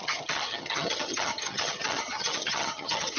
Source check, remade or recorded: remade